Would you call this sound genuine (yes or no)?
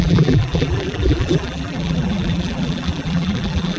no